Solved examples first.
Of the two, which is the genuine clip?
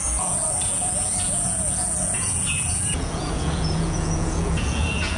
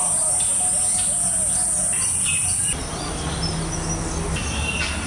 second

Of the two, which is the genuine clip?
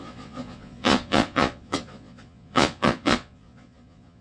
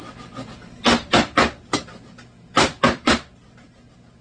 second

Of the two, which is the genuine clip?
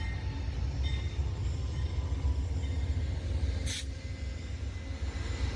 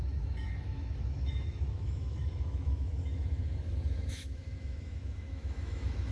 first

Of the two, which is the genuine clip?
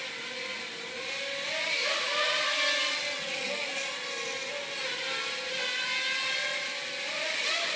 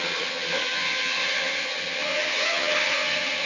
first